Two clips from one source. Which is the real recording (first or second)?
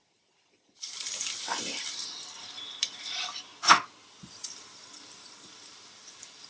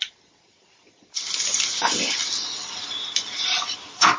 second